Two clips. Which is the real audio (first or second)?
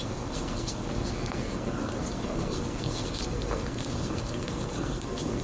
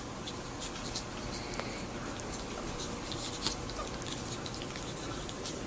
second